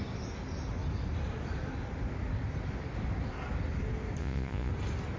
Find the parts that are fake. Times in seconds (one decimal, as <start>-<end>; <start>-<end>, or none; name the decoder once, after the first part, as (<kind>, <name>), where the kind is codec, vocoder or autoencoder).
4.2-4.7 (vocoder, Vocos)